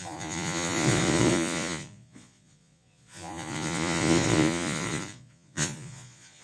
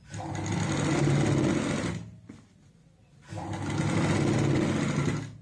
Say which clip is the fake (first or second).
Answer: first